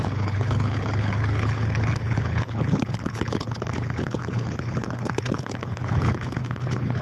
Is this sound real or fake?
fake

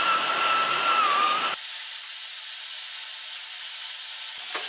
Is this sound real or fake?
real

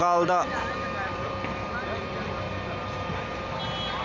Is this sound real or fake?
fake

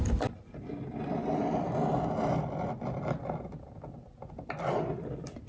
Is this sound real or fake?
real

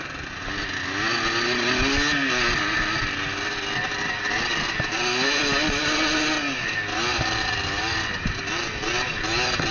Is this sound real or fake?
real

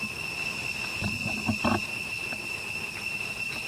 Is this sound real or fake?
real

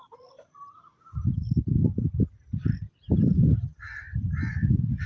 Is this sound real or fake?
real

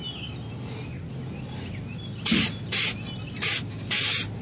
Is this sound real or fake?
real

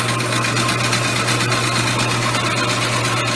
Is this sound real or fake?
real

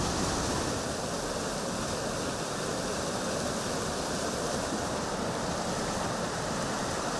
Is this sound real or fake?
real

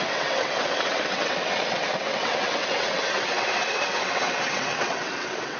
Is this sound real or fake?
fake